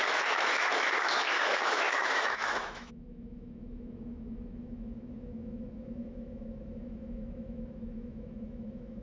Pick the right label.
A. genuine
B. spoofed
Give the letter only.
B